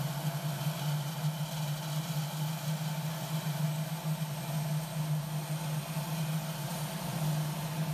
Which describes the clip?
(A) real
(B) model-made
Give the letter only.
A